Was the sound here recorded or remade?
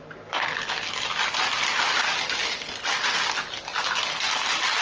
recorded